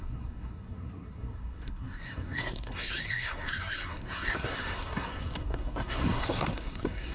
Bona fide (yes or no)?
no